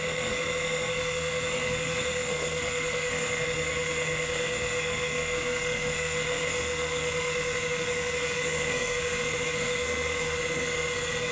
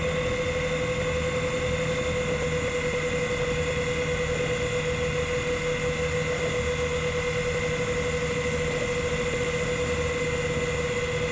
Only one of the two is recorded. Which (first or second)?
second